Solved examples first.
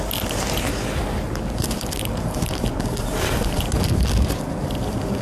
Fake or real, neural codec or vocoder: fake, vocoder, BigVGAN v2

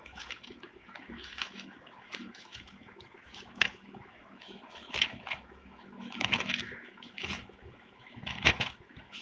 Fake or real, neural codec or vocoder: fake, autoencoder, DAC-VAE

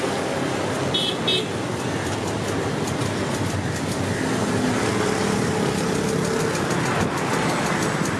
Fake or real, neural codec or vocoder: real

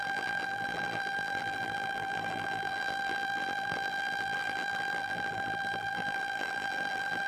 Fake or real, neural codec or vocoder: fake, vocoder, BigVGAN v2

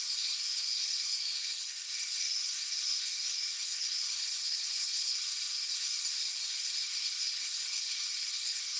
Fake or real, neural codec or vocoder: fake, codec, SNAC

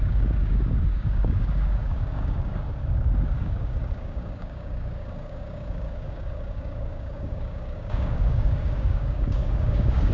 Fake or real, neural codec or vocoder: fake, codec, DAC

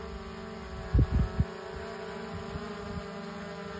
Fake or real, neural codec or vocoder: real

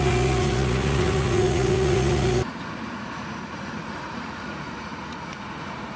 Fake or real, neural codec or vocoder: fake, vocoder, Vocos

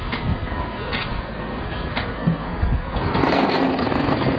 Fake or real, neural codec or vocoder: fake, codec, SNAC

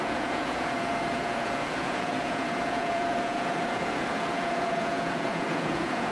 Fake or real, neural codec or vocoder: fake, vocoder, Vocos